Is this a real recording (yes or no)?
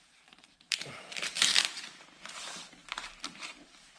no